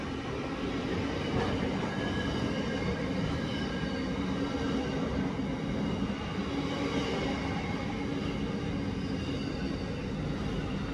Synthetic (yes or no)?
no